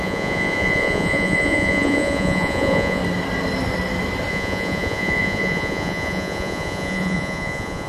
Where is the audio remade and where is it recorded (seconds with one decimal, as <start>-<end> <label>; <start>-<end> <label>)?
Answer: 0.0-3.0 remade; 3.0-4.3 recorded; 4.3-7.9 remade